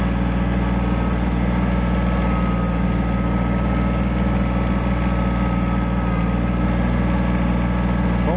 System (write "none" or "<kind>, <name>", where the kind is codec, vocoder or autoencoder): none